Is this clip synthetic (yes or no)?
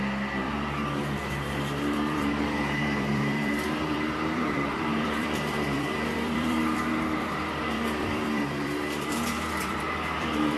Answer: yes